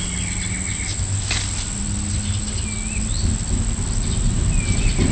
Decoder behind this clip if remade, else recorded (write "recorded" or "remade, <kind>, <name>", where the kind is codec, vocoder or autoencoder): recorded